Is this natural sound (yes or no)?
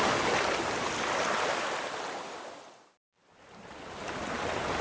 yes